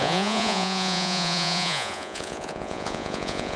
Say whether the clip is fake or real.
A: fake